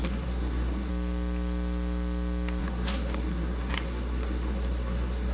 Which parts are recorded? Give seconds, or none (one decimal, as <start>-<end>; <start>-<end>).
0.9-2.6